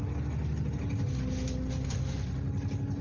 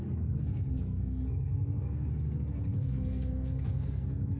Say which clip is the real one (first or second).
first